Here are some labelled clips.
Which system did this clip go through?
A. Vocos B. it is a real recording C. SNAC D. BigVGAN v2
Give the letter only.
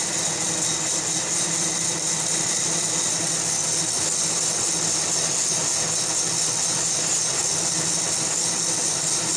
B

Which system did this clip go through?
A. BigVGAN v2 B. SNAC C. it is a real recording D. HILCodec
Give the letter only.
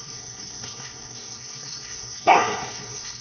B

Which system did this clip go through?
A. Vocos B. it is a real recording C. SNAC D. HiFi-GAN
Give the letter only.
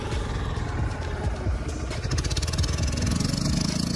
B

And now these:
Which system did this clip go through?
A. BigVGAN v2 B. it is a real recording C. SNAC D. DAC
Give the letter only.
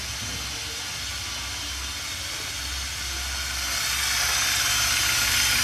B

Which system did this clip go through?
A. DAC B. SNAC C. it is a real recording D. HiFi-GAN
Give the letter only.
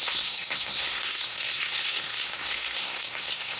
B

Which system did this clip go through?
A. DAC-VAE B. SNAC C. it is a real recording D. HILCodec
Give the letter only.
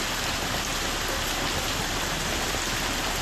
C